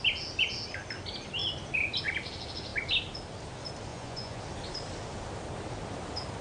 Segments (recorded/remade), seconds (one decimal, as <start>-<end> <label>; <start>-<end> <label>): 0.0-3.9 recorded; 3.9-4.4 remade; 4.4-6.4 recorded